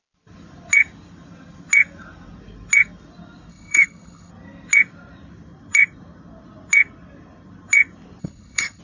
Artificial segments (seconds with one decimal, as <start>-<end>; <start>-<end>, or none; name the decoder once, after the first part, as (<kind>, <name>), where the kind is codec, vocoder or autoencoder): 3.5-4.3 (codec, HILCodec); 8.2-8.8